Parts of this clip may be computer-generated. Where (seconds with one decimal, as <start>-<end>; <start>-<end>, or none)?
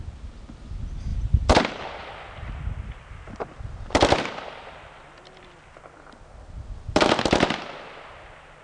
1.1-1.6; 2.0-5.8